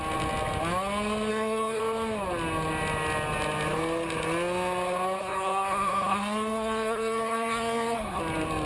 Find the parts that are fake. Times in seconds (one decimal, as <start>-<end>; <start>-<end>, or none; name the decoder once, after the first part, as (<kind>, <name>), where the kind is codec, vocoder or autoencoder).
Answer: 1.3-1.8 (codec, SNAC); 5.2-8.2